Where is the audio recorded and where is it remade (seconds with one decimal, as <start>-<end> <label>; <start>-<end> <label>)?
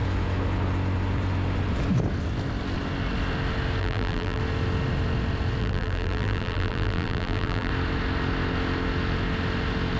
0.0-3.8 recorded; 3.8-4.4 remade; 4.4-5.6 recorded; 5.6-7.7 remade; 7.7-10.0 recorded